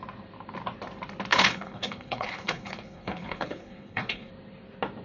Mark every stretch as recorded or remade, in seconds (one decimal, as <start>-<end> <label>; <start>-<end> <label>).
0.0-1.3 recorded; 1.3-4.3 remade; 4.3-5.0 recorded